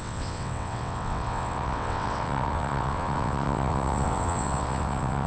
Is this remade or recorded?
remade